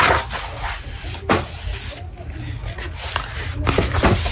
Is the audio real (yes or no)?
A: yes